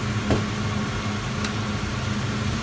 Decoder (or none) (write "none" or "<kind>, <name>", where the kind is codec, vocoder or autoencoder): none